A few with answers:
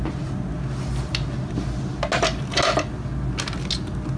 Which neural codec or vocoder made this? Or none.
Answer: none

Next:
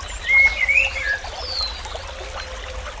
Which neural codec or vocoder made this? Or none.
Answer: none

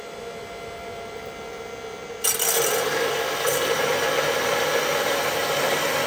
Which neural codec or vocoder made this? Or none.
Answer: none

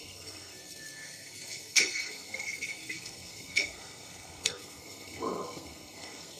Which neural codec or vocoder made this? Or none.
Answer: codec, SNAC